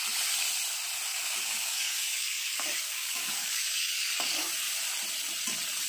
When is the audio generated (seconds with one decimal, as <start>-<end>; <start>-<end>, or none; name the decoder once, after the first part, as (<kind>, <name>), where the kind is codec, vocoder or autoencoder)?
1.1-4.5 (codec, DAC)